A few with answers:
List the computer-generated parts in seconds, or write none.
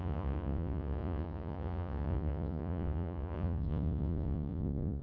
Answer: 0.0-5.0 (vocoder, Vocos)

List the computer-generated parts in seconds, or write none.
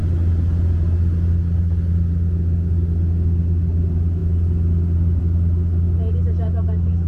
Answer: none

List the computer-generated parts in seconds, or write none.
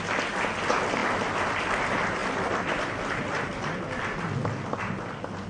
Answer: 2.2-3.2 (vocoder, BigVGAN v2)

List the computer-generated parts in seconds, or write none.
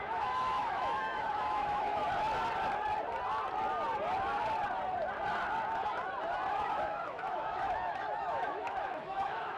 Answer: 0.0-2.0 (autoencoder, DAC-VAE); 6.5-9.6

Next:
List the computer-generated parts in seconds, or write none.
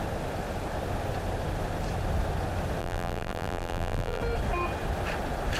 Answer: 2.8-4.2 (vocoder, BigVGAN v2)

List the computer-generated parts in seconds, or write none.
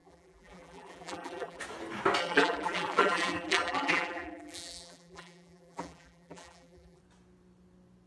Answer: 0.0-1.6 (vocoder, BigVGAN v2); 2.2-7.0